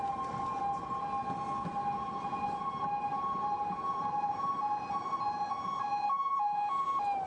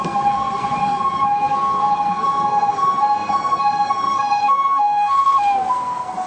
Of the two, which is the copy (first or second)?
second